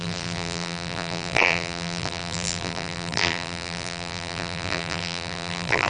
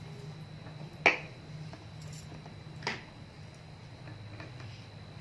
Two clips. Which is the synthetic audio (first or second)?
first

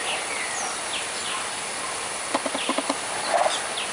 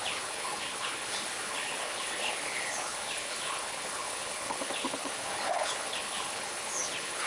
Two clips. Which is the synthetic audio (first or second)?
second